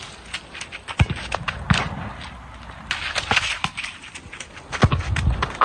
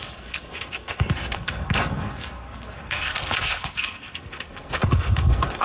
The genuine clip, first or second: first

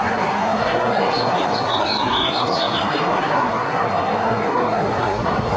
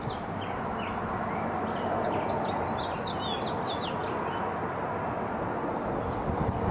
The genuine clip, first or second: second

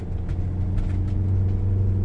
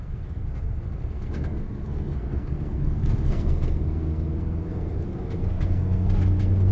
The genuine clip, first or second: first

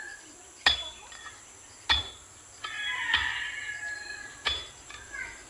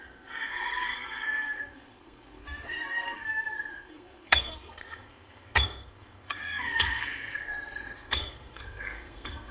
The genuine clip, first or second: first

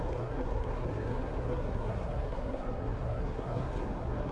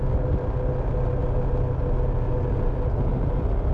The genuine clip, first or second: second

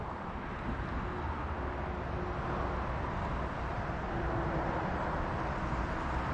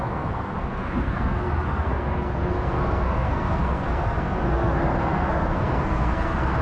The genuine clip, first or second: first